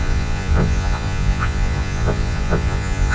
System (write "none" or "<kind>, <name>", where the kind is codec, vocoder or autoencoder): vocoder, Vocos